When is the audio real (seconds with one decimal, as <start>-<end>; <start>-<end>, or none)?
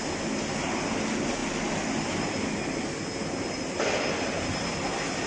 0.0-5.3